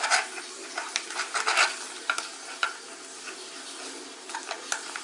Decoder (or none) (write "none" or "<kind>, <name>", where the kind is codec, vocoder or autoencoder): none